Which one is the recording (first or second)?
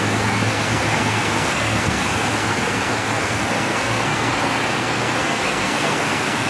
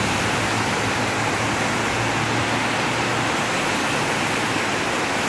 second